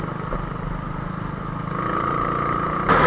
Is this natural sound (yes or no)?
yes